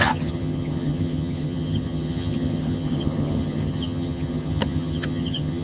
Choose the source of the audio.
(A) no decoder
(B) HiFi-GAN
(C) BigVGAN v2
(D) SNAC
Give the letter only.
B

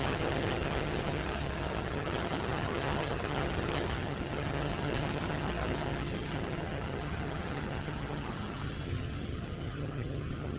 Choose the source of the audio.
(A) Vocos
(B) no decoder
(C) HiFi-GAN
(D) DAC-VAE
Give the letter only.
C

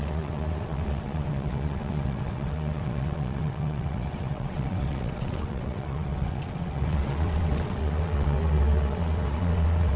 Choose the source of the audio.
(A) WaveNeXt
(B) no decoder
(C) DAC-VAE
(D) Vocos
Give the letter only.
A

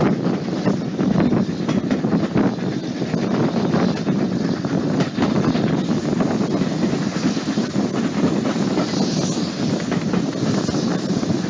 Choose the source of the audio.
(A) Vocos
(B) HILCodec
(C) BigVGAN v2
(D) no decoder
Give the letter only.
D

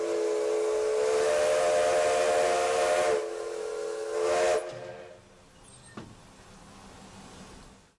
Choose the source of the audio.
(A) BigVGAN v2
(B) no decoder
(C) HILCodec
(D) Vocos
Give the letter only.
B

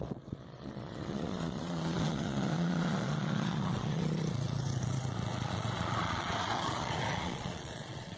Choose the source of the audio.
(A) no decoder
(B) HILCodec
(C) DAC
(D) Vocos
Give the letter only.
D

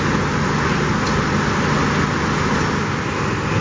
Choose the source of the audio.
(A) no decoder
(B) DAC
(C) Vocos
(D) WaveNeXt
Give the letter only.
A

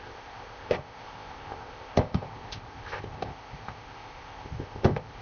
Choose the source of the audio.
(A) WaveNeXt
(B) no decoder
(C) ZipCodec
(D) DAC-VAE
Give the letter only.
C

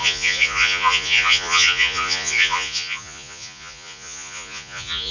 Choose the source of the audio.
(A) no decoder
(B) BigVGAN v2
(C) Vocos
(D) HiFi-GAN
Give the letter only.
C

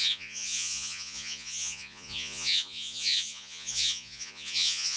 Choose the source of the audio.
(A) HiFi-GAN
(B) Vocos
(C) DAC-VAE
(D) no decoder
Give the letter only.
B